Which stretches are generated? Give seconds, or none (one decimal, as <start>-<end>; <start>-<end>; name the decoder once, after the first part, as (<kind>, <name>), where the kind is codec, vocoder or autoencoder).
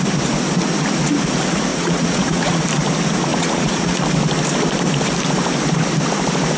1.7-2.6 (vocoder, Vocos); 3.3-4.0